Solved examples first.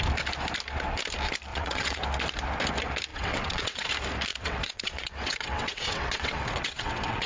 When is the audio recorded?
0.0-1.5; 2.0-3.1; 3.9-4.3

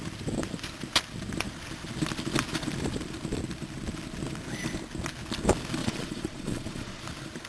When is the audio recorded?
0.0-5.8; 7.0-7.5

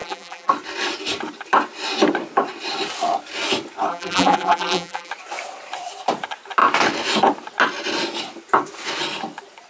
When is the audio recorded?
0.5-3.9; 5.1-9.7

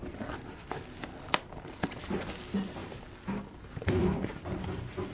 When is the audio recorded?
0.0-2.8; 4.6-5.1

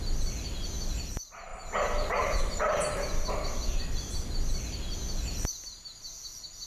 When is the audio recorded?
0.0-1.5; 2.7-6.7